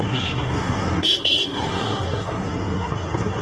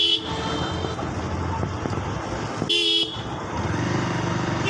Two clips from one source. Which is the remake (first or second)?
first